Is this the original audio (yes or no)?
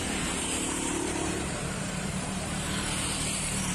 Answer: no